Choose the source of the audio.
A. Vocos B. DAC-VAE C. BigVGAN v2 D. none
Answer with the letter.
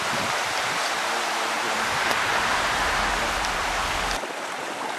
D